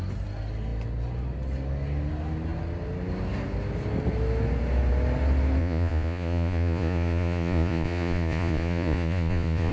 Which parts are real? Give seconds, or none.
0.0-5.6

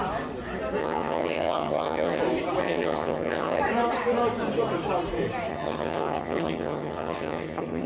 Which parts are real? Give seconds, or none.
0.0-0.8; 2.2-2.6; 3.6-5.5